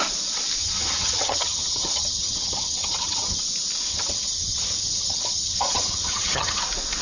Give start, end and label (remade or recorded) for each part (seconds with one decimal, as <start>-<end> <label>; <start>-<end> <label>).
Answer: 0.0-0.6 recorded; 0.6-3.4 remade; 3.4-3.9 recorded; 3.9-6.6 remade; 6.6-7.0 recorded